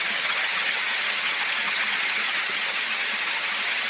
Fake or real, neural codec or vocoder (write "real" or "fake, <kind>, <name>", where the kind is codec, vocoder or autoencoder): fake, vocoder, HiFi-GAN